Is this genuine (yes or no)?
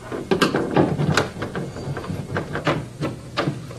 yes